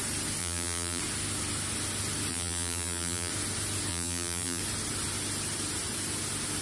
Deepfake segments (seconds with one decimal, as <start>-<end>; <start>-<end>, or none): 0.4-1.0; 2.3-3.3; 3.9-4.6